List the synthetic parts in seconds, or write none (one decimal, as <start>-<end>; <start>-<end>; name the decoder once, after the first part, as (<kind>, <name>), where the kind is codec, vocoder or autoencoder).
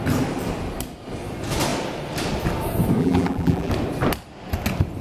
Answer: 3.0-3.7 (vocoder, BigVGAN v2)